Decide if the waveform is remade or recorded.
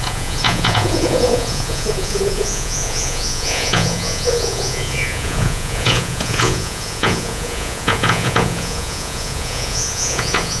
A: remade